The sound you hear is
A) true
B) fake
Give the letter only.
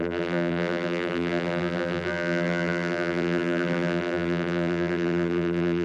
B